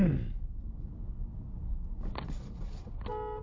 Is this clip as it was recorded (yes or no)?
yes